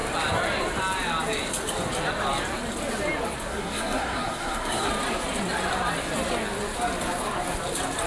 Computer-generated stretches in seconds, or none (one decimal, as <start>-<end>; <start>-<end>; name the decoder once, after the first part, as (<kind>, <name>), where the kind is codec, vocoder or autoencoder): 3.5-4.9 (codec, SNAC)